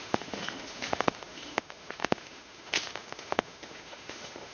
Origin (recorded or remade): remade